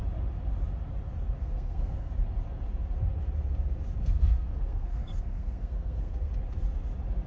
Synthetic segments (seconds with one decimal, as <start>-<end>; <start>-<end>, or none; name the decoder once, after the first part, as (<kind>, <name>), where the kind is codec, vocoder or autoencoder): 1.4-2.1 (codec, SNAC); 4.0-6.3